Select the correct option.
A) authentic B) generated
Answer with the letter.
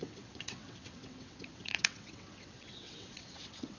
B